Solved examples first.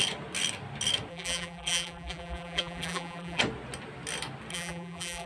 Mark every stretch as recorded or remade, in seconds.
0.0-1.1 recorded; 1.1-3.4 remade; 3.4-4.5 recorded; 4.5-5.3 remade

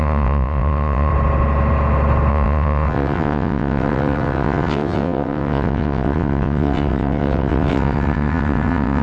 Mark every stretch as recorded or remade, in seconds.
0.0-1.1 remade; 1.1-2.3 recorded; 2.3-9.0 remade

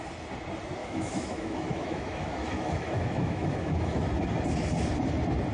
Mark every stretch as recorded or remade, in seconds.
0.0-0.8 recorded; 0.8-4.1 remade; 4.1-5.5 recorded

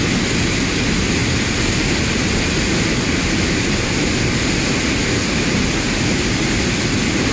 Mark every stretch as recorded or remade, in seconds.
0.0-7.3 recorded

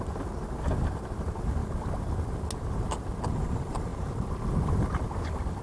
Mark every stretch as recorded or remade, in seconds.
0.0-5.6 recorded

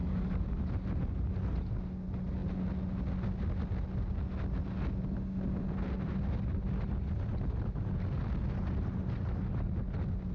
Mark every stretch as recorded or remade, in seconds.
0.0-0.6 remade; 0.6-10.3 recorded

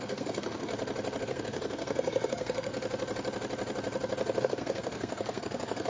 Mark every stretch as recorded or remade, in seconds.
0.0-0.7 remade; 0.7-1.2 recorded; 1.2-2.7 remade; 2.7-4.4 recorded; 4.4-5.9 remade

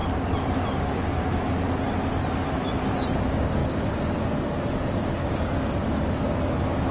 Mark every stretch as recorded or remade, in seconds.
0.0-6.9 recorded